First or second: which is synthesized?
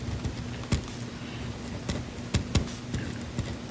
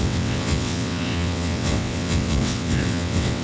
second